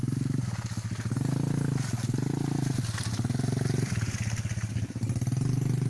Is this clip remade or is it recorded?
recorded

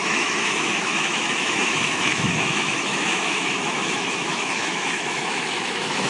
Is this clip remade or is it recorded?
remade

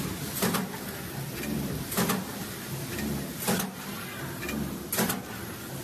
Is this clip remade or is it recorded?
recorded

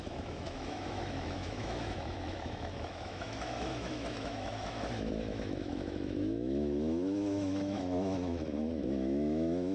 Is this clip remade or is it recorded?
remade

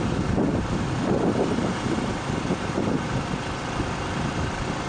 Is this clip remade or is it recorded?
recorded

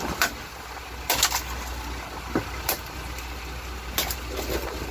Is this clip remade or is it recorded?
recorded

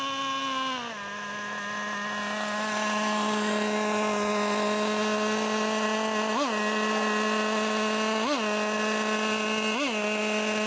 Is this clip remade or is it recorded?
recorded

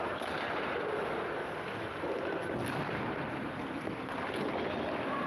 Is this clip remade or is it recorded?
recorded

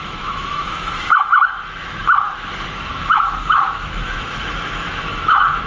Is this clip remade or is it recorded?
remade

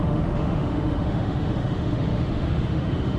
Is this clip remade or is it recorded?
remade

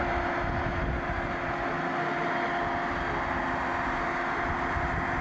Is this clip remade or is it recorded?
recorded